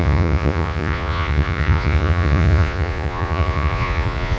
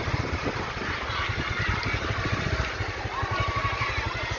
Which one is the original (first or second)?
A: second